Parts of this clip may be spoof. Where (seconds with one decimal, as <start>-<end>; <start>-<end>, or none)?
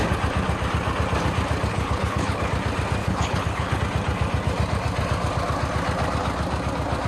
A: 1.7-2.5; 3.0-3.8